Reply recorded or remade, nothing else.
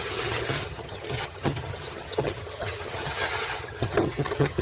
remade